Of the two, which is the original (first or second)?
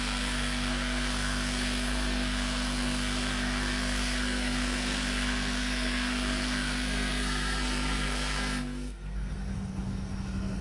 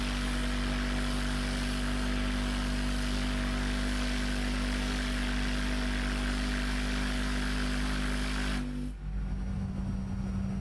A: second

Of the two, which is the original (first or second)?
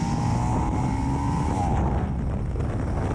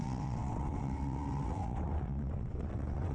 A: first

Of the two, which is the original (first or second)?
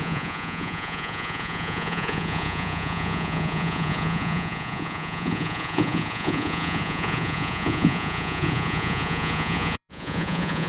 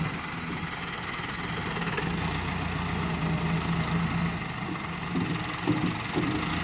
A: second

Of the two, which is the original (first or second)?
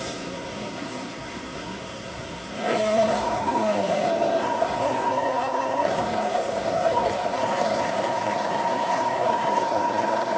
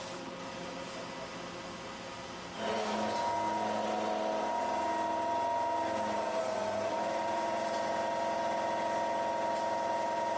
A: second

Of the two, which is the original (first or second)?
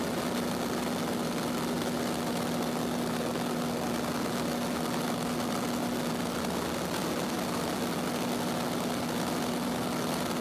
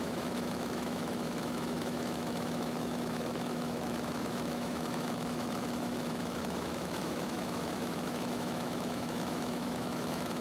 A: first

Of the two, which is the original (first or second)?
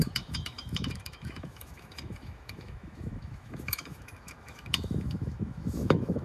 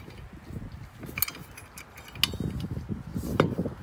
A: second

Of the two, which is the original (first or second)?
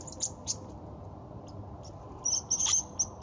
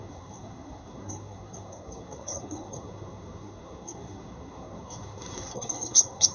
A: first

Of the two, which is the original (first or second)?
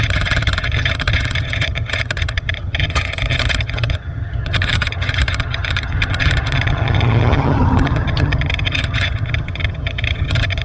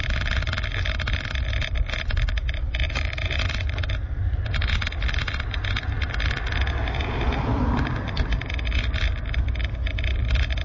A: second